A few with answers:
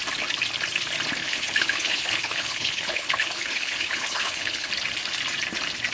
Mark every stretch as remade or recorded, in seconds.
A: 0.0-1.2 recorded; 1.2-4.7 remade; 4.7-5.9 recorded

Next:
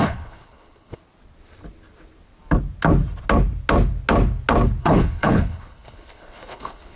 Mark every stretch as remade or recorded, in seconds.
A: 0.0-1.0 remade; 1.0-4.8 recorded; 4.8-7.0 remade

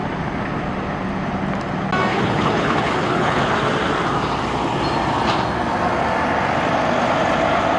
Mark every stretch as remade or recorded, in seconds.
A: 0.0-2.1 recorded; 2.1-3.4 remade; 3.4-7.8 recorded

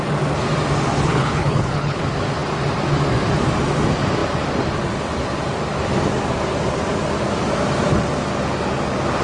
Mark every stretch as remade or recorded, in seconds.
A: 0.0-0.9 recorded; 0.9-2.0 remade; 2.0-9.2 recorded

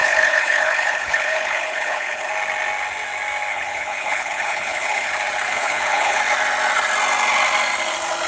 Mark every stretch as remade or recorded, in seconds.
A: 0.0-2.3 remade; 2.3-3.5 recorded; 3.5-5.1 remade; 5.1-5.5 recorded; 5.5-6.2 remade; 6.2-8.3 recorded

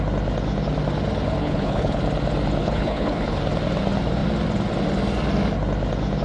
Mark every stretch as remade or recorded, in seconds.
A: 0.0-1.4 recorded; 1.4-2.0 remade; 2.0-2.6 recorded; 2.6-3.4 remade; 3.4-6.2 recorded